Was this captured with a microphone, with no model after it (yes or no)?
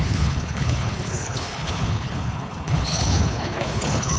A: no